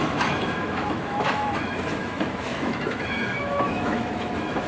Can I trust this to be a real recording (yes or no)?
no